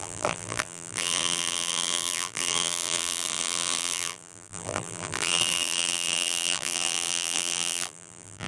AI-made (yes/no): yes